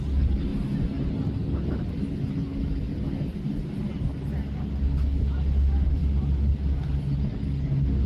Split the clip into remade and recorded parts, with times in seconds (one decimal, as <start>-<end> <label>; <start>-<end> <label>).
0.0-8.1 recorded